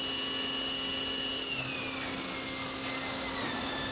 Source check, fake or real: real